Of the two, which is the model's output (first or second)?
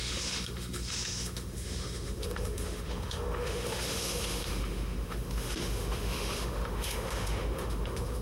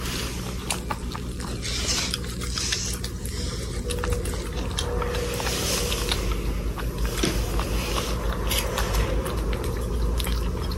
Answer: first